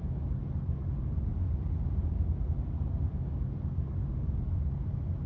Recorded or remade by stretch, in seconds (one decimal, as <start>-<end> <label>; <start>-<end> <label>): 0.0-5.3 recorded